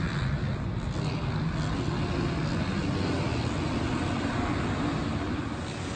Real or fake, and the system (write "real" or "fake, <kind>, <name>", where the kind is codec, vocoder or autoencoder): real